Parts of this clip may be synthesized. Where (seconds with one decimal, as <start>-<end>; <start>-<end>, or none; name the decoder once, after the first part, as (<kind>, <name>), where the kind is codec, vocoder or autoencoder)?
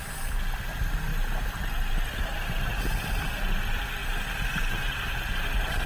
none